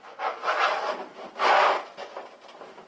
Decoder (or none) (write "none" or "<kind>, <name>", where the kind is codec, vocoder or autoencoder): none